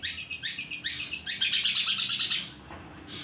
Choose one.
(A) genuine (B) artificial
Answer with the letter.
A